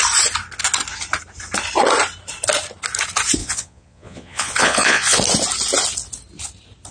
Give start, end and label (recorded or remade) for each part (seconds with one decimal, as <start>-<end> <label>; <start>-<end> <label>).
0.0-3.4 recorded; 3.4-5.2 remade; 5.2-6.9 recorded